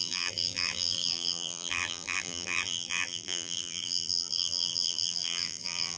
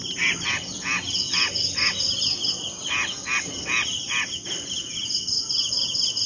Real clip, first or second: second